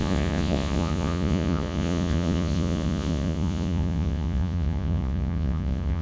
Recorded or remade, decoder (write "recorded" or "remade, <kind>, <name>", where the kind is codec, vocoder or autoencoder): remade, vocoder, Vocos